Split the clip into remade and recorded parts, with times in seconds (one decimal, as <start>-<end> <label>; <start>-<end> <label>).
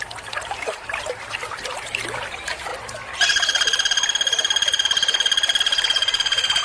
0.0-2.7 remade; 2.7-6.6 recorded